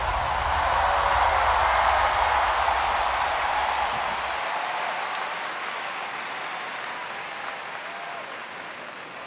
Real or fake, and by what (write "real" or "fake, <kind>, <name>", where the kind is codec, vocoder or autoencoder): real